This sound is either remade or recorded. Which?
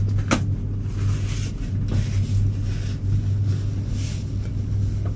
recorded